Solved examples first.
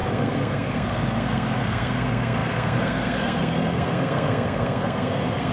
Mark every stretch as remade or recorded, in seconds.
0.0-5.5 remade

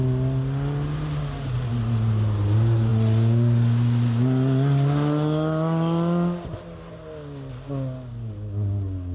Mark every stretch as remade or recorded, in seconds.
0.0-9.1 recorded